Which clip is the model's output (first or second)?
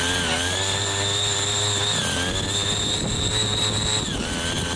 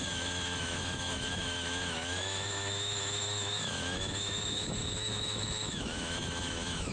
second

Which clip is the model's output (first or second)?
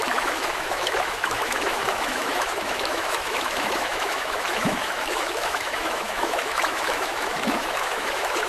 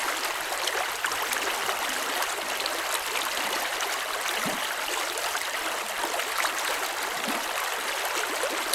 first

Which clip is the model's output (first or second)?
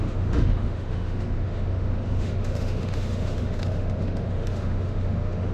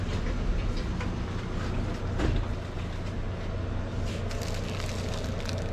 first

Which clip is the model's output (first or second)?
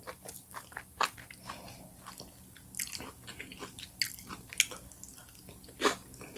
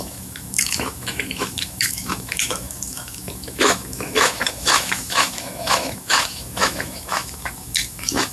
second